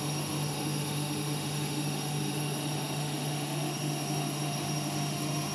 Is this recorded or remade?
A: remade